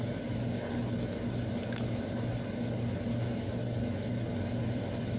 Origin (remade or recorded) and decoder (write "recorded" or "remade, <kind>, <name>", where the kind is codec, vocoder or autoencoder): recorded